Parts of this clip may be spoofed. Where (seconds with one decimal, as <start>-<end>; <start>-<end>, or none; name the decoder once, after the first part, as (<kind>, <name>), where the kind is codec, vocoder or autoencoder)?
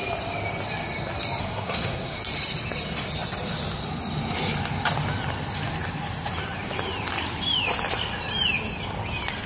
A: 1.4-2.2 (codec, SNAC)